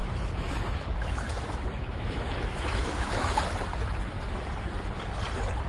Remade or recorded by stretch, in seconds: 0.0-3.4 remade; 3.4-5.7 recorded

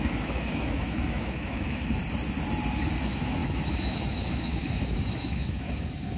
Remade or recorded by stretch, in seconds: 0.0-2.0 remade; 2.0-3.0 recorded; 3.0-6.2 remade

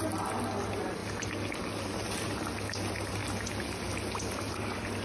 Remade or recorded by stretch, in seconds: 0.0-5.0 recorded